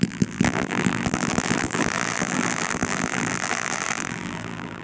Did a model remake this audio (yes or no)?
yes